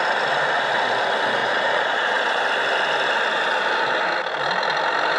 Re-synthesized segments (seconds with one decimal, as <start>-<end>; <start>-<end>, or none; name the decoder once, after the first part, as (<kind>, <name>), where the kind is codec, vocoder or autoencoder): 1.4-2.4 (vocoder, Vocos)